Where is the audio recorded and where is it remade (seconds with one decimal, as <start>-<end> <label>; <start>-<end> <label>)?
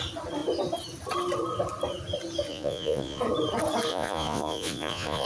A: 0.0-2.5 recorded; 2.5-3.2 remade; 3.2-3.9 recorded; 3.9-5.3 remade